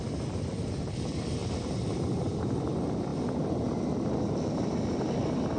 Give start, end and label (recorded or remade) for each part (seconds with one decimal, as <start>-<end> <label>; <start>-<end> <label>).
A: 0.0-1.4 recorded; 1.4-2.7 remade; 2.7-5.6 recorded